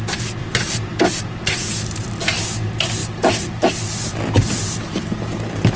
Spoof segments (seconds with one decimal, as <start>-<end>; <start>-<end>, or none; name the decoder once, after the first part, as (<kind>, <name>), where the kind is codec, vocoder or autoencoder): 0.4-1.6 (vocoder, BigVGAN v2)